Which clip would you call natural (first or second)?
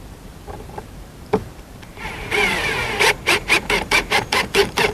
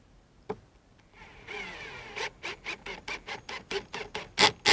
second